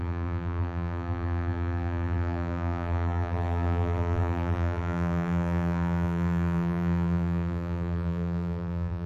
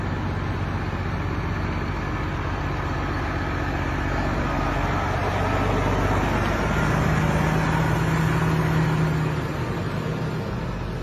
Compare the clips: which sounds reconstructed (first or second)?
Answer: first